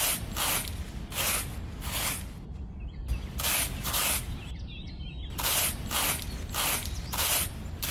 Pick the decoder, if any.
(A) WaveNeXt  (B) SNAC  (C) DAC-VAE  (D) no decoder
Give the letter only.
D